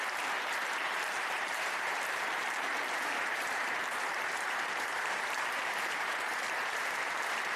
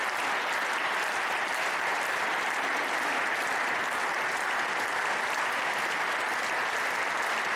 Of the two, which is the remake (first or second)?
first